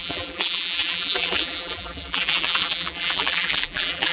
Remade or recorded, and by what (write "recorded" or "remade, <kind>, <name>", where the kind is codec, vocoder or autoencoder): remade, vocoder, BigVGAN v2